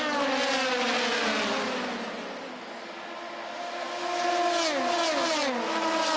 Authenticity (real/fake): real